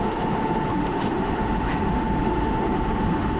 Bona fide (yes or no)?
no